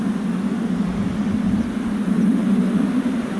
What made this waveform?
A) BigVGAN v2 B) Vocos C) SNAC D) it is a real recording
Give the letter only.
D